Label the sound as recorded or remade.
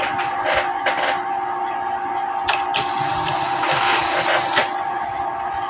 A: recorded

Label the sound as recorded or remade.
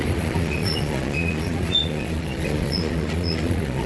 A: remade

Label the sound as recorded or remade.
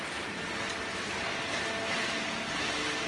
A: recorded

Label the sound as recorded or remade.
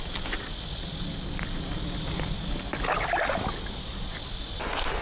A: recorded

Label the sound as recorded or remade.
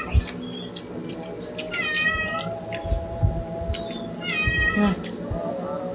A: recorded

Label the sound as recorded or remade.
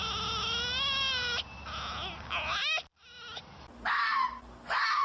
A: recorded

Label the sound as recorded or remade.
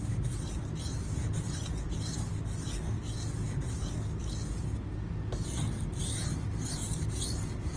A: recorded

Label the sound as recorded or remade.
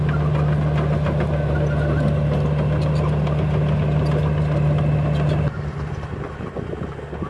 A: recorded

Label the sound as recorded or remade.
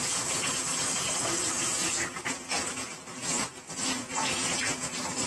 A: remade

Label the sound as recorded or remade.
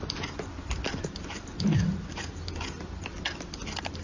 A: recorded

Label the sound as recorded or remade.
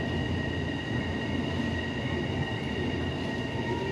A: recorded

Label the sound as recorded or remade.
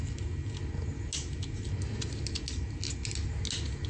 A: recorded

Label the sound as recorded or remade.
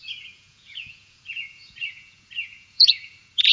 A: remade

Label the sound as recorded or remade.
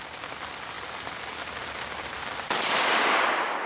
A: recorded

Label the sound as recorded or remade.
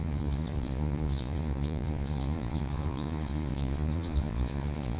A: remade